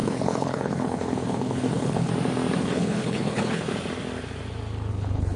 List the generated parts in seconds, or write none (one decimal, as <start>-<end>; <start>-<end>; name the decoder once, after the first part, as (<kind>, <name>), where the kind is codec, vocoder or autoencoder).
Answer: 0.0-2.1 (codec, HILCodec); 2.6-3.7; 4.9-5.4